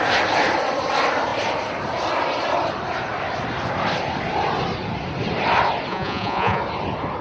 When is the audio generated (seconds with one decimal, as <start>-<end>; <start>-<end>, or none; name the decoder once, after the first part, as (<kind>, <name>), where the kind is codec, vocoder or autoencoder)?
5.9-6.6 (vocoder, Vocos)